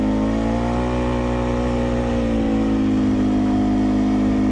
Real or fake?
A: real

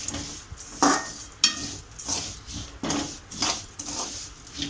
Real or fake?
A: real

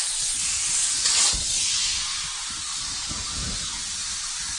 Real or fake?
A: real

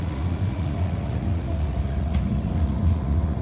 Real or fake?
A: fake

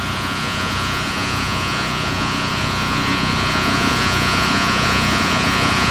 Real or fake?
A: fake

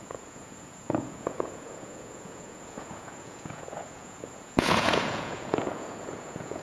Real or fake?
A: fake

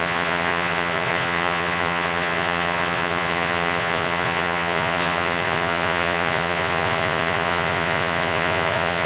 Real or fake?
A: fake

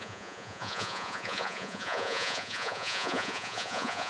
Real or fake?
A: fake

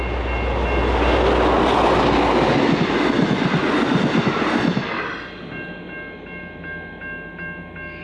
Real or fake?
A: real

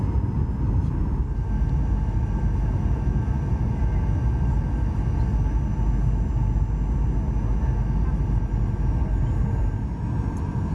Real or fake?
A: real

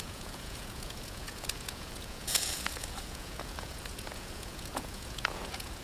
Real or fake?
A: fake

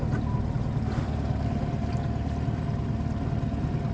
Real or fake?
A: real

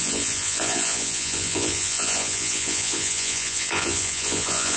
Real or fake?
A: fake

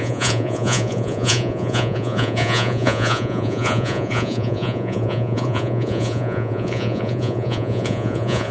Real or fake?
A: fake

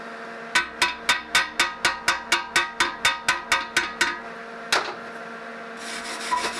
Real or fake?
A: real